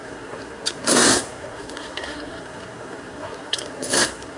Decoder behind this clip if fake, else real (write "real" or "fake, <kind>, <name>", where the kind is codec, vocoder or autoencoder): fake, codec, SNAC